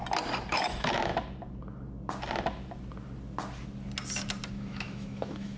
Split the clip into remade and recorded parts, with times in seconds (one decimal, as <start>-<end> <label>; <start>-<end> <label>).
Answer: 0.0-0.5 recorded; 0.5-1.1 remade; 1.1-4.5 recorded; 4.5-5.6 remade